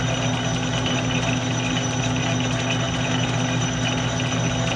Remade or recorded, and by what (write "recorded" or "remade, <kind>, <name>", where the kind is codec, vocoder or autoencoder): recorded